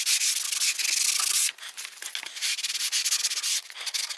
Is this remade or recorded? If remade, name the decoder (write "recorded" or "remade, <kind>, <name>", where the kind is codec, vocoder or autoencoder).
recorded